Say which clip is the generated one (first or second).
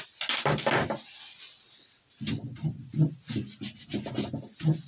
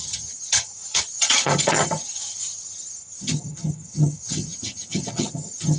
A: second